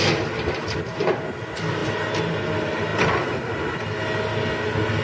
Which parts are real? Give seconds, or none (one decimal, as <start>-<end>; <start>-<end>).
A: 0.0-5.0